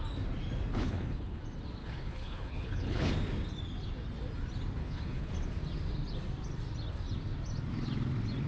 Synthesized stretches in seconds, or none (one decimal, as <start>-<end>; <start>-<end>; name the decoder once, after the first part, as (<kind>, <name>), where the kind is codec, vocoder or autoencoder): 0.7-1.4 (codec, HILCodec); 1.8-3.1; 4.8-5.3